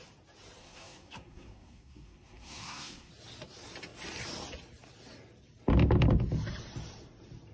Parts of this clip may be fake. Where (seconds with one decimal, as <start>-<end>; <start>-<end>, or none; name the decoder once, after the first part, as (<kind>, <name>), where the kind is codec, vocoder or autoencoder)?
0.6-3.1 (codec, SNAC)